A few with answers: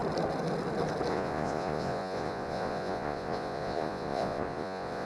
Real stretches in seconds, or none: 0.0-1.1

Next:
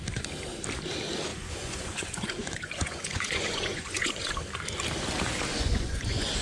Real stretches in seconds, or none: 0.0-1.3; 4.3-5.5

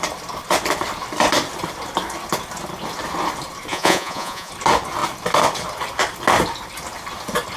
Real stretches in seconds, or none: 0.0-3.7; 4.5-7.6

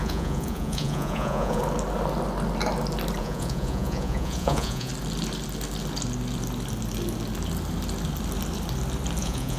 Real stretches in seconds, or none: 1.6-3.2; 4.9-9.2

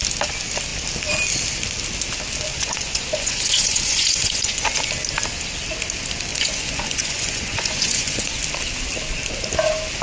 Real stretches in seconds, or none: 0.0-2.5; 4.9-6.3; 8.4-10.0

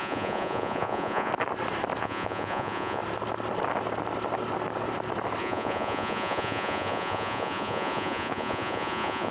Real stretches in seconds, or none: 1.3-2.0; 3.0-5.4

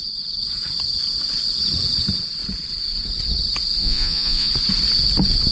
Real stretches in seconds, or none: 0.0-3.8; 4.5-5.5

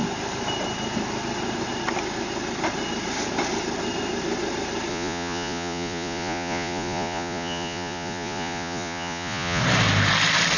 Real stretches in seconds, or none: 0.0-4.9; 9.6-10.6